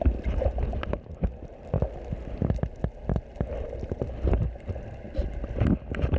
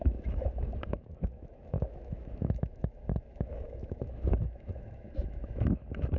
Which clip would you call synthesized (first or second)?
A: second